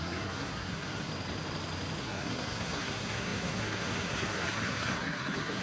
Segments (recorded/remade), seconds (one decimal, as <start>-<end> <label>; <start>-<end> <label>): 0.0-1.1 remade; 1.1-2.0 recorded; 2.0-5.6 remade